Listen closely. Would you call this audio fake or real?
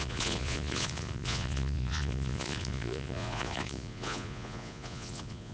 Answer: fake